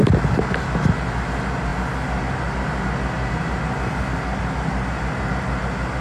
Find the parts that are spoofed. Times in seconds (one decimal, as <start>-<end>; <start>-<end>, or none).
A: none